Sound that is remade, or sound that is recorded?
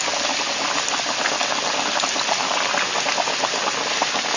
recorded